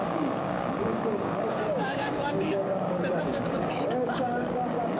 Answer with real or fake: fake